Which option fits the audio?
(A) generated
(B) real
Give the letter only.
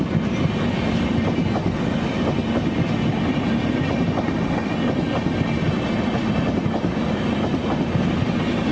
B